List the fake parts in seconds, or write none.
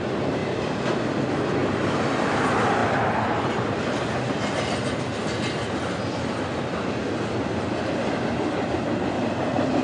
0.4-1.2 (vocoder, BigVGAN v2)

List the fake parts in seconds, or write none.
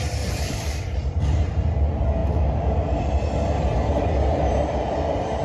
0.0-5.4 (vocoder, BigVGAN v2)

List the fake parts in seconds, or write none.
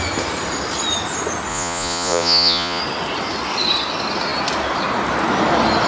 1.5-2.8 (vocoder, Vocos)